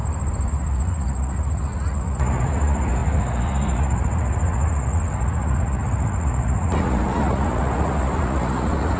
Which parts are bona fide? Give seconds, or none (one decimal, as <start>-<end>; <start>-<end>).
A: 0.0-0.5